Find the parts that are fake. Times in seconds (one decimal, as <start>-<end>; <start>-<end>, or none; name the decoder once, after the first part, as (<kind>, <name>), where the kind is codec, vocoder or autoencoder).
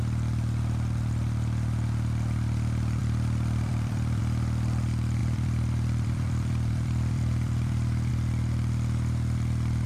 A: 3.0-4.2 (vocoder, BigVGAN v2); 5.2-8.1